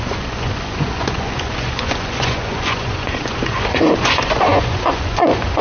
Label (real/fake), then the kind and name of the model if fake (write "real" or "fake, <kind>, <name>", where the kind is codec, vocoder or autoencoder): fake, vocoder, Vocos